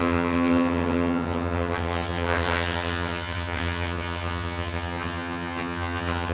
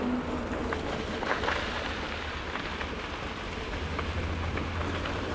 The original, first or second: second